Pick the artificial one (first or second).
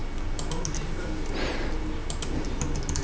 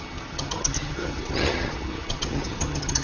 second